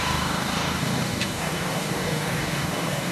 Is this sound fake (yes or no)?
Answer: yes